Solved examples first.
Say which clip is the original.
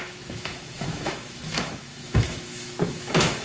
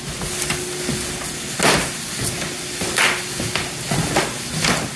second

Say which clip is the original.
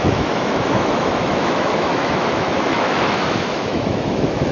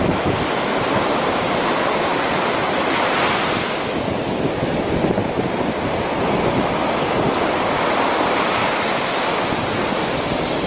second